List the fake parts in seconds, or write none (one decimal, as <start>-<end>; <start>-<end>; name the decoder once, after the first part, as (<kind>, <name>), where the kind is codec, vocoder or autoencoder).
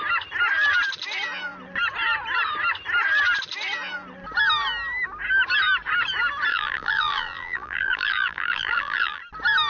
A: 6.5-9.2 (vocoder, BigVGAN v2)